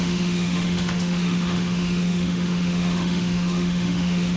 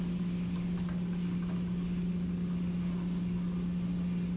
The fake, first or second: first